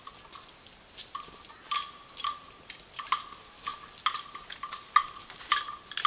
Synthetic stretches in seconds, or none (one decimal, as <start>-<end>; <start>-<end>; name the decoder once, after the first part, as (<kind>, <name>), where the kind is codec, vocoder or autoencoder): none